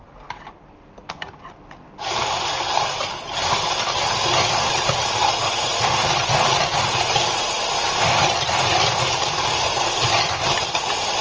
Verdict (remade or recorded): recorded